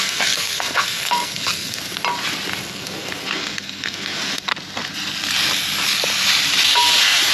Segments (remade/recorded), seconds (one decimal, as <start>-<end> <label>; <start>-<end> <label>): 0.0-1.8 remade; 1.8-2.7 recorded; 2.7-4.5 remade; 4.5-7.3 recorded